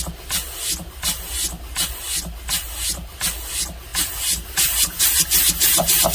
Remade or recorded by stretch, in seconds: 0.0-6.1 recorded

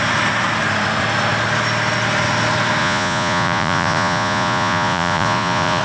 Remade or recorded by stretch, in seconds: 0.0-2.8 recorded; 2.8-5.8 remade

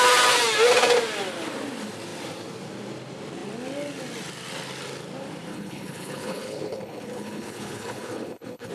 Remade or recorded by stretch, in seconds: 0.0-5.5 recorded; 5.5-8.7 remade

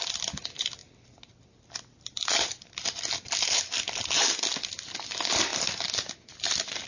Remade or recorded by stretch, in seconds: 0.0-6.9 recorded

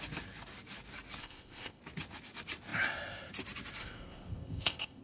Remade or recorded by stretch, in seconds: 0.0-1.2 recorded; 1.2-1.8 remade; 1.8-3.8 recorded; 3.8-5.0 remade

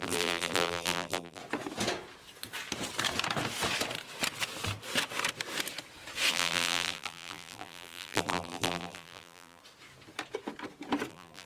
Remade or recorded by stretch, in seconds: 0.0-1.4 remade; 1.4-6.3 recorded; 6.3-9.6 remade; 9.6-11.1 recorded; 11.1-11.5 remade